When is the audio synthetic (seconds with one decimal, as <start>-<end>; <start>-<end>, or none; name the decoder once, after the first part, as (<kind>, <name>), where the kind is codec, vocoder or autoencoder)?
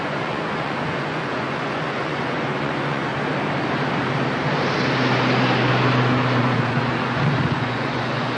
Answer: 0.0-3.1 (vocoder, Vocos); 6.4-8.4